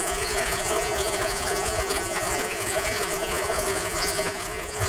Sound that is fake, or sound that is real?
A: fake